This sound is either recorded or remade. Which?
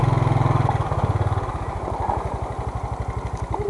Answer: recorded